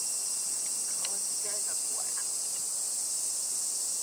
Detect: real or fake real